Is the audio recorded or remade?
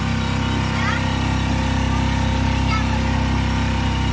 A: recorded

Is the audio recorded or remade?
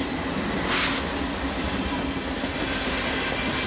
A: recorded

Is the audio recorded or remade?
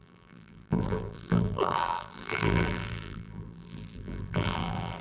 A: remade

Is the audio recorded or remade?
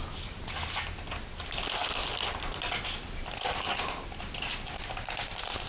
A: recorded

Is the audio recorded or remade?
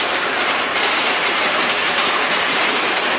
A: remade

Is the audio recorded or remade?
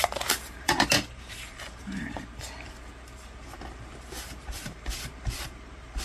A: remade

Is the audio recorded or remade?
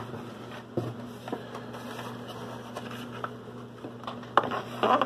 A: remade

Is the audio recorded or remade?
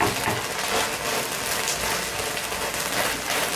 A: recorded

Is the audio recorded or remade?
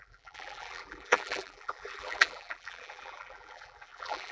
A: remade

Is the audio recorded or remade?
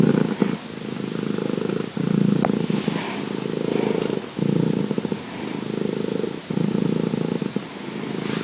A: recorded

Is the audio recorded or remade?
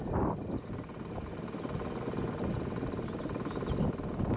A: recorded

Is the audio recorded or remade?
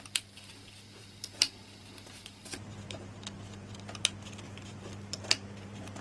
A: remade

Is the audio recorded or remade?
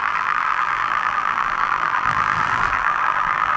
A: remade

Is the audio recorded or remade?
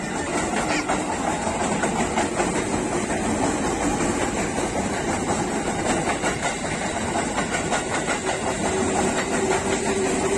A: recorded